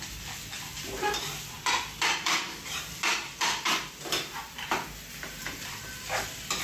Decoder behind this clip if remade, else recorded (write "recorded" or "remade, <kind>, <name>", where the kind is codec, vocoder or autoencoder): remade, vocoder, BigVGAN v2